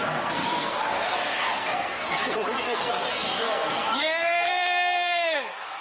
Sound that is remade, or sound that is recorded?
remade